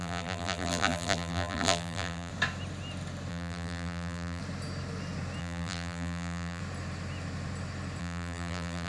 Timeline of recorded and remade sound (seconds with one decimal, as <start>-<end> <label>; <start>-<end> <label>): 0.0-2.3 remade; 2.3-3.3 recorded; 3.3-4.4 remade; 4.4-5.4 recorded; 5.4-6.6 remade; 6.6-8.0 recorded; 8.0-8.9 remade